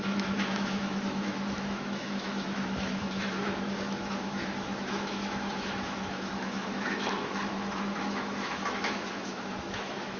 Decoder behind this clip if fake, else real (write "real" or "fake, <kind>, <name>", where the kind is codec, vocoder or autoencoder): fake, autoencoder, DAC-VAE